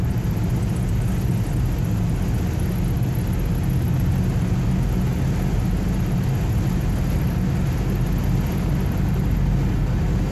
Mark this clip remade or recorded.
recorded